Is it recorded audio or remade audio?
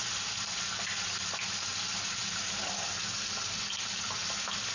recorded